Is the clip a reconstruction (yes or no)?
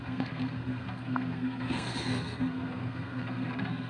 yes